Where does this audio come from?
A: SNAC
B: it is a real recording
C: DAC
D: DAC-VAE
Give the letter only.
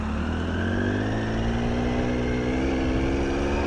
B